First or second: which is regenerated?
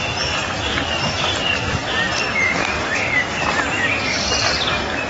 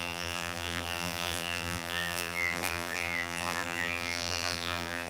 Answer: second